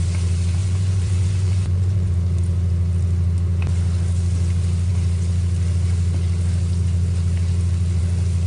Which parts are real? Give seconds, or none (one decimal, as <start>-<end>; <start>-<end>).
0.0-0.6; 2.1-8.5